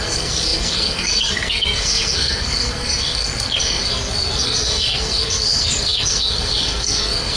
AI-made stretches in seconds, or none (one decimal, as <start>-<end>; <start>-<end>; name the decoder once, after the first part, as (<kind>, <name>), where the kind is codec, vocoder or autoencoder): 0.0-7.4 (codec, SNAC)